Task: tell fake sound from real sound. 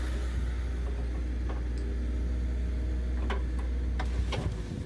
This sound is real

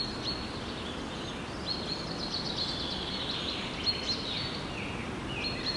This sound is real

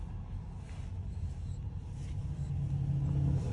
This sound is real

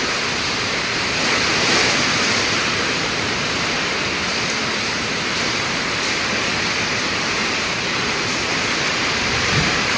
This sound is fake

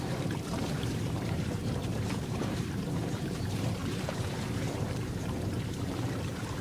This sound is fake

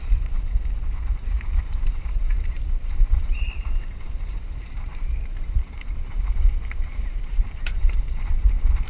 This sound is fake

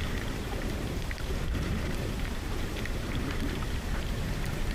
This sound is fake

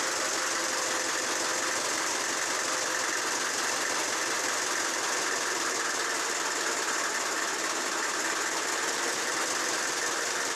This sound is real